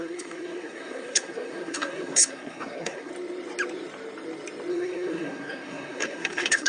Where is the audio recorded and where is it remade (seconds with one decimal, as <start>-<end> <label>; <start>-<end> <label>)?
0.0-3.1 remade; 3.1-4.7 recorded; 4.7-6.7 remade